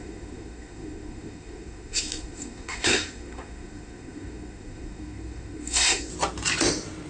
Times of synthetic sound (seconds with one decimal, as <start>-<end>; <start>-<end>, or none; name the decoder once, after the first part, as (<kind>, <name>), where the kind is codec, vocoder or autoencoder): 0.0-6.1 (codec, SNAC)